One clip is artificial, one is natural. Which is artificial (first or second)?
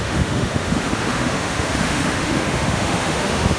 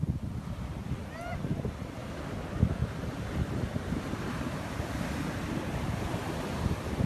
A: first